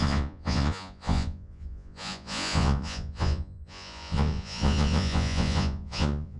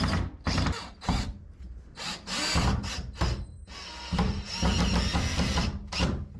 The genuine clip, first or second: second